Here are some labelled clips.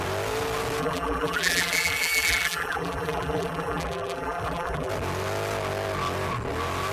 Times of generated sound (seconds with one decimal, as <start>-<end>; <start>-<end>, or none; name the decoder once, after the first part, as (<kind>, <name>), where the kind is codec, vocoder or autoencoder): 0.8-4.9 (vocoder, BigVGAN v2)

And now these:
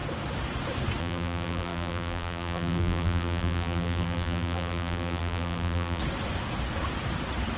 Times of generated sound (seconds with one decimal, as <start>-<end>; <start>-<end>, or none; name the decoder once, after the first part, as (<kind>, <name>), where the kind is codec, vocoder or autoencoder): 1.0-6.0 (vocoder, BigVGAN v2)

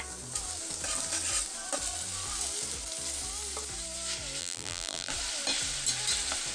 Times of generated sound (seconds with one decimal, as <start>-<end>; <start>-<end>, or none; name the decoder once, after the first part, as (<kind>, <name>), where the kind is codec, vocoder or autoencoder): 4.4-5.1 (vocoder, BigVGAN v2)

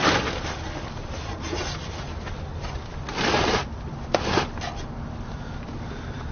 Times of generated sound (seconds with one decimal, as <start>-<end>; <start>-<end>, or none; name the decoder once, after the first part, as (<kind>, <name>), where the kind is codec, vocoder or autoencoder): 1.0-2.4 (vocoder, BigVGAN v2)

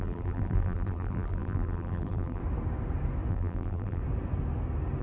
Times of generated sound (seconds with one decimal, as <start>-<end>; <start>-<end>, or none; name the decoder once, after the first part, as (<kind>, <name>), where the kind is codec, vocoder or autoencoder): 0.0-2.4 (vocoder, BigVGAN v2); 3.3-4.0

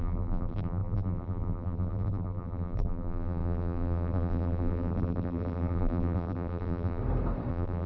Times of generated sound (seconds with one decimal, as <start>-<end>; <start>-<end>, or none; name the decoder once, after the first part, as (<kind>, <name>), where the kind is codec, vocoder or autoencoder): 0.0-7.0 (vocoder, BigVGAN v2); 7.5-7.9

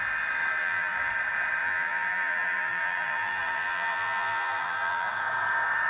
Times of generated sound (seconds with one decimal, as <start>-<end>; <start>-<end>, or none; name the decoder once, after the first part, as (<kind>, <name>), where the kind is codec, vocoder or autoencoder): 0.6-1.1 (vocoder, BigVGAN v2); 1.6-5.1